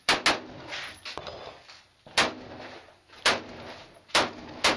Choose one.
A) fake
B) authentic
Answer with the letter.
B